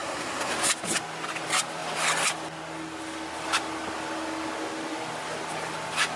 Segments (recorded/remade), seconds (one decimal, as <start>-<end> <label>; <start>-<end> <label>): 0.0-0.5 remade; 0.5-6.2 recorded